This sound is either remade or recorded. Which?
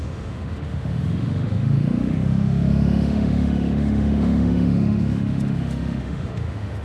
remade